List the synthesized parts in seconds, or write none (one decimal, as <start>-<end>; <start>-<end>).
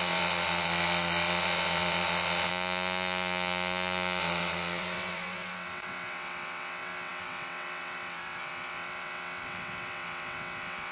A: 0.0-2.5; 4.2-10.9